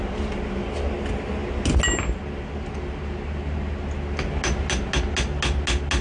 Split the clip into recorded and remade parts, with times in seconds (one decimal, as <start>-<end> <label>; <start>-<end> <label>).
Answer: 0.0-6.0 recorded